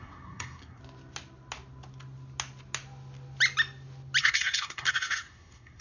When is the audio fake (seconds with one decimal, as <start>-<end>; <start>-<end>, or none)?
0.0-0.8; 4.2-5.8